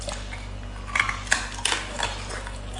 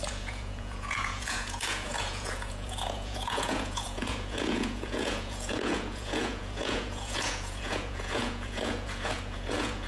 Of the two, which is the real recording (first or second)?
first